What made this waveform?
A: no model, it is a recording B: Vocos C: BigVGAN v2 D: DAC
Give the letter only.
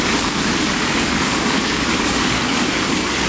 D